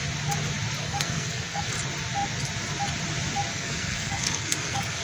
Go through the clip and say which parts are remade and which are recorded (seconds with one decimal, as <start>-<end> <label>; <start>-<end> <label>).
0.0-0.8 recorded; 0.8-1.7 remade; 1.7-3.5 recorded; 3.5-5.0 remade